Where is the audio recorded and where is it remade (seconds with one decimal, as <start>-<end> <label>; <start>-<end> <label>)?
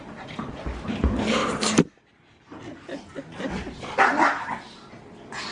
0.0-5.5 recorded